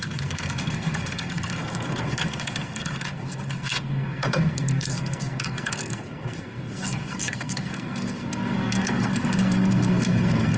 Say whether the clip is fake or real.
fake